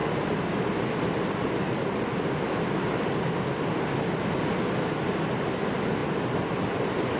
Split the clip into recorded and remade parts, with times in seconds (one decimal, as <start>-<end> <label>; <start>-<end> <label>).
0.0-7.2 recorded